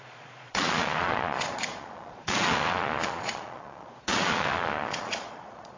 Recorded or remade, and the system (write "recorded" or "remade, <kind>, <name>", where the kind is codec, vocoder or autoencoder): remade, vocoder, Vocos